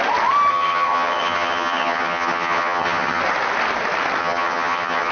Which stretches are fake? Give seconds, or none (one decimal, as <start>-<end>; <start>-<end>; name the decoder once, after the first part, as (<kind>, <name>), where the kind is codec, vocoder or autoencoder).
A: 0.5-3.2 (vocoder, HiFi-GAN); 4.2-5.1